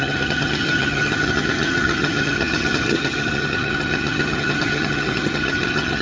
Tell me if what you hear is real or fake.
fake